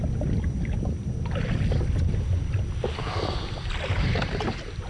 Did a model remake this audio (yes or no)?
no